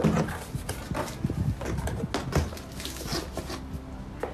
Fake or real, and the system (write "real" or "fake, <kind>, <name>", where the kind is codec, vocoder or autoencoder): real